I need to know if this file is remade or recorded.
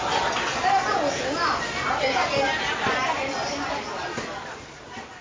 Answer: recorded